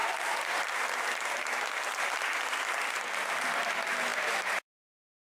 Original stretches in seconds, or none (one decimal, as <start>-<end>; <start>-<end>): 0.0-4.1; 4.8-5.2